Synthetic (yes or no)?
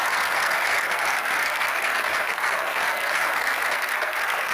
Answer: yes